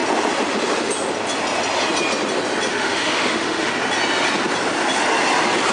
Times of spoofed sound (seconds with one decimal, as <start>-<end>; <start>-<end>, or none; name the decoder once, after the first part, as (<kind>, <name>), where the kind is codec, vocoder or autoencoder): 2.7-3.7 (autoencoder, DAC-VAE)